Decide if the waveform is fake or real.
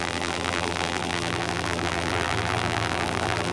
fake